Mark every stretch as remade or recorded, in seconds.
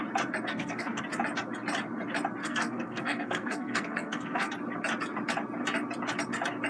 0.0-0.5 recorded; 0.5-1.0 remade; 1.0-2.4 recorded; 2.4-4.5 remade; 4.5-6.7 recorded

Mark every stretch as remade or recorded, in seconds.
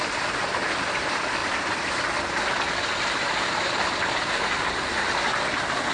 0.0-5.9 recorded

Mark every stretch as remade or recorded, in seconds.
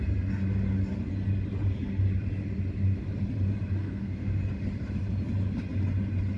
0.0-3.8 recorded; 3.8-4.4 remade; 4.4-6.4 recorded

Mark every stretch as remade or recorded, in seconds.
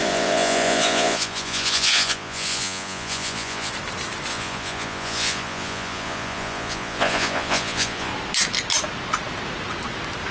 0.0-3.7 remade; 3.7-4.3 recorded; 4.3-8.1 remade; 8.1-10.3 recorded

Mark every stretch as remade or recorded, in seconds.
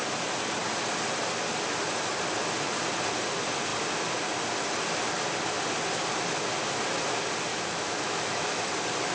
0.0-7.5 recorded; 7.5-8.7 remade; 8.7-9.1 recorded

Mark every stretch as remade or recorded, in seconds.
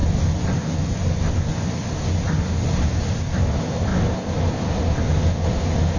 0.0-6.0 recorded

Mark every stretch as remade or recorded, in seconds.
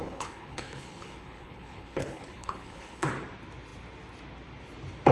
0.0-3.1 remade; 3.1-5.1 recorded